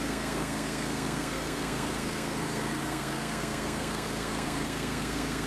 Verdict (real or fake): fake